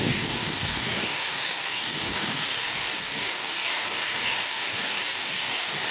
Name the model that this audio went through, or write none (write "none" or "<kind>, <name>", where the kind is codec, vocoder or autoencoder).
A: codec, DAC